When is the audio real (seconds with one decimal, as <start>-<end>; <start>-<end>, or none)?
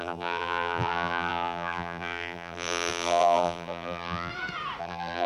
4.3-4.8